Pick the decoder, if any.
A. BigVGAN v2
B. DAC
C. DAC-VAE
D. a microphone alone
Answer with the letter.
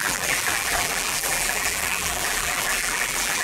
A